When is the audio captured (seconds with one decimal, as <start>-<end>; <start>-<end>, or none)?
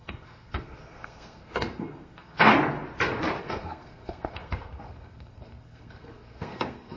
2.5-3.4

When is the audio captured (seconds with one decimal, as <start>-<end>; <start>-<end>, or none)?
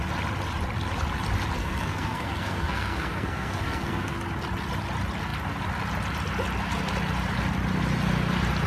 0.0-1.6; 4.2-8.7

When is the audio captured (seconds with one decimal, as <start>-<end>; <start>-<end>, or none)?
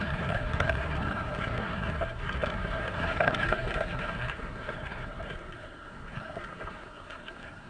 none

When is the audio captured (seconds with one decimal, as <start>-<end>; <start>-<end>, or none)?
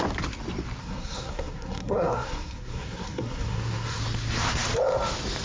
0.0-0.8; 4.0-5.4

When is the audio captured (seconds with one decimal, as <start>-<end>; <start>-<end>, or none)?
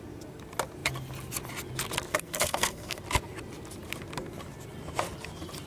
0.0-2.1; 3.0-5.7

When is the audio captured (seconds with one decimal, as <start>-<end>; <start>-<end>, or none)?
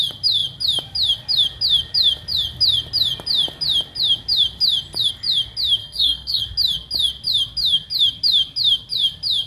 0.0-5.8; 6.4-9.5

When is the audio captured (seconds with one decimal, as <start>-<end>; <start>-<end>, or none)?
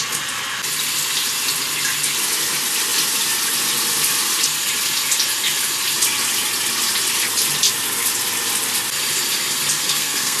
0.0-9.8